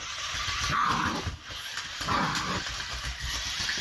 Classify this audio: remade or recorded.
recorded